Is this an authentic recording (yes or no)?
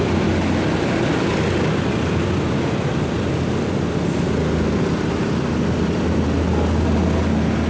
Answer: yes